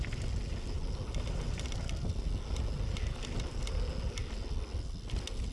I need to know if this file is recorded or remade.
recorded